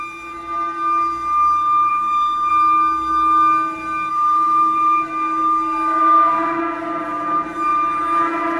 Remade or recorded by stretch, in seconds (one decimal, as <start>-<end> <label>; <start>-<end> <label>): 0.0-1.9 recorded; 1.9-2.5 remade; 2.5-4.1 recorded; 4.1-6.6 remade; 6.6-8.6 recorded

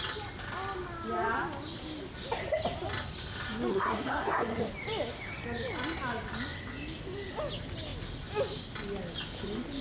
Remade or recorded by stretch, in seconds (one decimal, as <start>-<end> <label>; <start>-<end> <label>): 0.0-3.7 recorded; 3.7-4.7 remade; 4.7-9.8 recorded

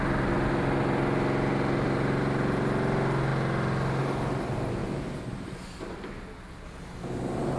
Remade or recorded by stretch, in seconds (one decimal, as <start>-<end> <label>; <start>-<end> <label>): 0.0-7.6 recorded

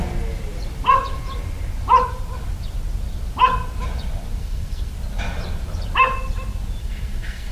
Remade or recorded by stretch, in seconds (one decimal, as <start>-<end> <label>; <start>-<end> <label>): 0.0-4.4 recorded; 4.4-4.9 remade; 4.9-6.8 recorded; 6.8-7.5 remade

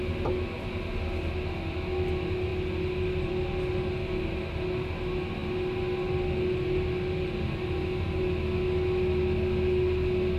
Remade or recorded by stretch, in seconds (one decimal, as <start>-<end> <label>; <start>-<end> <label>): 0.0-10.4 recorded

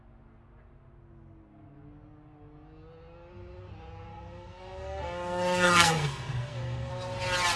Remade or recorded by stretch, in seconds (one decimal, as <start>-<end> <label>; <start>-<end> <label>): 0.0-4.1 recorded; 4.1-6.9 remade; 6.9-7.6 recorded